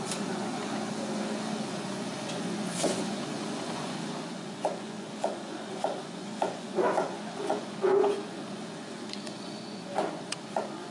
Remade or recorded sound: remade